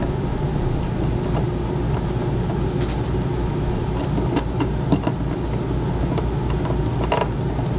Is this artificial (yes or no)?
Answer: no